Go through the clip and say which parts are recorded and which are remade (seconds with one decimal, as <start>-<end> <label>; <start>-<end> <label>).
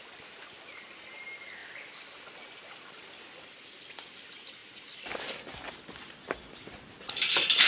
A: 0.0-7.7 recorded